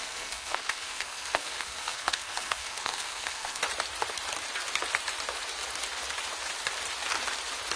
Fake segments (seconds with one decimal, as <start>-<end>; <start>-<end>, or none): 0.0-3.6